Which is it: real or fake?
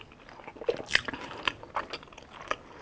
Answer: real